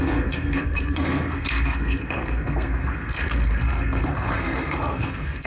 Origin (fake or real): fake